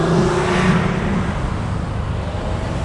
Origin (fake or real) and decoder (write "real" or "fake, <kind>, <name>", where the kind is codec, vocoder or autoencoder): real